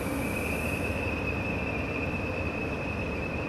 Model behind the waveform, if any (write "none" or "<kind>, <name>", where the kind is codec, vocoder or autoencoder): vocoder, BigVGAN v2